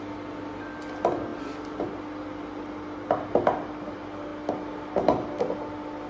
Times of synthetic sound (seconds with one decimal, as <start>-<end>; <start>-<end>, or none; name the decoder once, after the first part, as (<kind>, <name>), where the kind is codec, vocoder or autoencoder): none

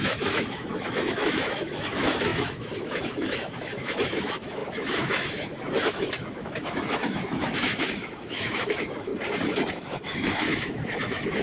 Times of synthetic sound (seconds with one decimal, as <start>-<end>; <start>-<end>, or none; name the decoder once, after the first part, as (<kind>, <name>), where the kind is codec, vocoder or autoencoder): 0.0-9.1 (autoencoder, DAC-VAE); 9.7-11.4

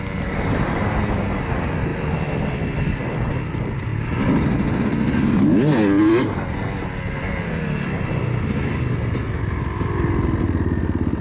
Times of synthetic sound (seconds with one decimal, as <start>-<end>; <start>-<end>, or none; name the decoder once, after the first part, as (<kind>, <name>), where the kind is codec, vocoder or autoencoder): none

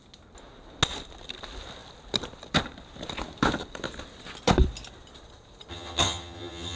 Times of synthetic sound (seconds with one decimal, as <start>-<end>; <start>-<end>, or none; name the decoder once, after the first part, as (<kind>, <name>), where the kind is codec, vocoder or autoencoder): 5.7-6.8 (vocoder, HiFi-GAN)

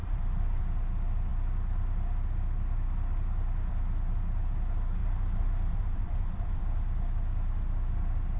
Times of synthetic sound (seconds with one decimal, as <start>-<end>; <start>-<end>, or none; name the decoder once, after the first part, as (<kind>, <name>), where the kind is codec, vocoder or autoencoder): 0.0-0.6 (vocoder, BigVGAN v2); 5.0-6.6

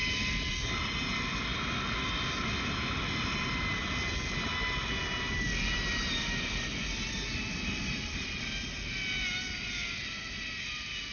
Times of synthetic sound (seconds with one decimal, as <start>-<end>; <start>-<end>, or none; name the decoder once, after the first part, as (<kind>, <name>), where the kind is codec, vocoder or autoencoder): none

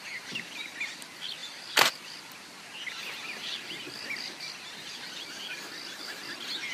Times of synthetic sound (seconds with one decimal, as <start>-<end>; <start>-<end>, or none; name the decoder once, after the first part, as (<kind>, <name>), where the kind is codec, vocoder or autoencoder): 1.4-5.4 (vocoder, BigVGAN v2)

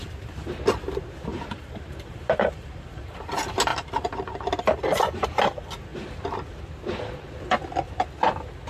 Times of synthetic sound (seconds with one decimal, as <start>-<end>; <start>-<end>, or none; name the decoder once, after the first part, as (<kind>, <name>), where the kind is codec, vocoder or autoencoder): 1.3-3.0 (vocoder, BigVGAN v2); 3.7-4.5